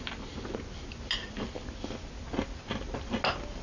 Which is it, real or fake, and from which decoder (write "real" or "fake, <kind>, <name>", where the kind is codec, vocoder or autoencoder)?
real